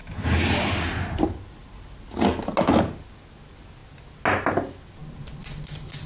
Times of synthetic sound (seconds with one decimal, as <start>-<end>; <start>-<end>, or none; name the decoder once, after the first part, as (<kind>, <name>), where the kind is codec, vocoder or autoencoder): none